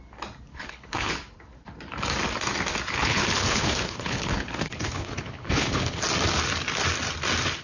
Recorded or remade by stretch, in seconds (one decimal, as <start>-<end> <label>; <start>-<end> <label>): 0.0-0.5 recorded; 0.5-1.1 remade; 1.1-3.0 recorded; 3.0-6.0 remade; 6.0-7.6 recorded